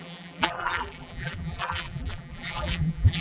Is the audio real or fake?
fake